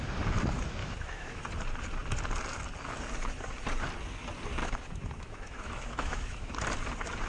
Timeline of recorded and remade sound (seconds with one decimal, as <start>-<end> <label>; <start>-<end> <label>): 0.0-0.8 recorded; 0.8-1.4 remade; 1.4-4.6 recorded; 4.6-6.5 remade; 6.5-7.3 recorded